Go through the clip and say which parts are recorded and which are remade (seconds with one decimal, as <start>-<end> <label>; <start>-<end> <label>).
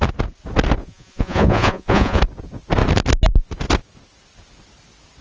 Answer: 0.0-0.8 recorded; 0.8-2.2 remade; 2.2-5.2 recorded